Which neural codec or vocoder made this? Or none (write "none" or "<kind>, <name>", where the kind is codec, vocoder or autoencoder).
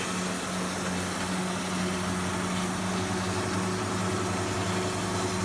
none